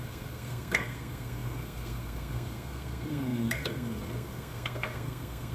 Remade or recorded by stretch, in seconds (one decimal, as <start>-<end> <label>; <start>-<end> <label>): 0.0-5.5 remade